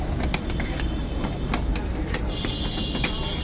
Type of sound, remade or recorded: recorded